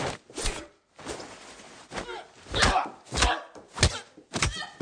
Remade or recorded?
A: recorded